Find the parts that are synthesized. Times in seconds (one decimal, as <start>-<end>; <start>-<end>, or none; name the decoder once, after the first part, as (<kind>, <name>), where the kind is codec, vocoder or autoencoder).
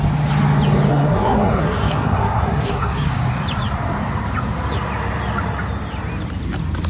0.9-3.1 (codec, SNAC)